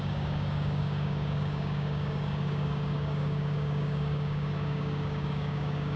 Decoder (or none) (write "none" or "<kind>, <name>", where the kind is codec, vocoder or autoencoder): codec, DAC